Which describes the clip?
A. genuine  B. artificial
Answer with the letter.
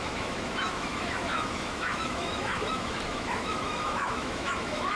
B